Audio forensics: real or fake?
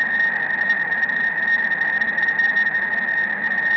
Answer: real